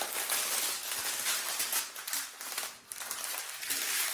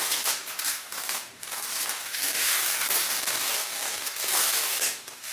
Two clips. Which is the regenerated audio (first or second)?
second